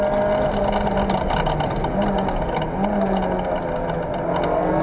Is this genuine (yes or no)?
yes